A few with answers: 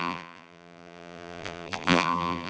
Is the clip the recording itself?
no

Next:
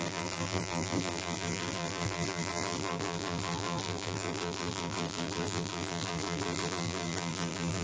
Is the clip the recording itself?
no